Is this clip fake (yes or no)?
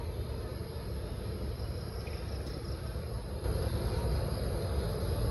no